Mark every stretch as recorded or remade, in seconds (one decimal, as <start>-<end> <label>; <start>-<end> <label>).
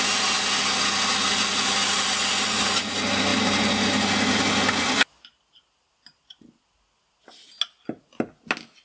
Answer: 0.0-8.8 recorded